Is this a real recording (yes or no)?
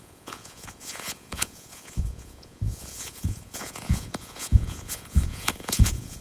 no